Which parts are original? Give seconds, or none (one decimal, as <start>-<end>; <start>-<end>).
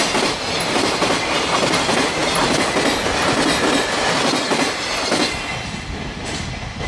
0.0-6.9